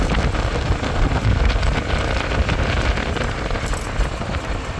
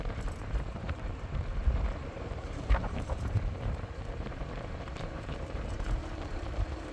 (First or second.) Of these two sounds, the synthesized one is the second